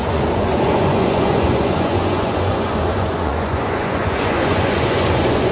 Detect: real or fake fake